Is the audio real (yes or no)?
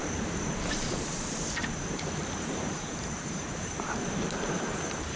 no